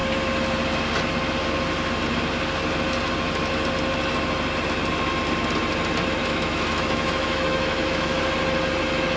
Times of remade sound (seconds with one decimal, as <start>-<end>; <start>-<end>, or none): 6.2-8.2